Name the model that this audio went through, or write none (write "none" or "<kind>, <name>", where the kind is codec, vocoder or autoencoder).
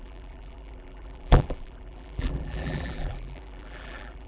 vocoder, BigVGAN v2